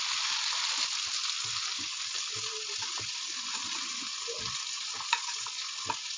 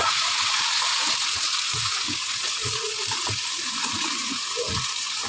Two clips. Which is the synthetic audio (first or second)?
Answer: second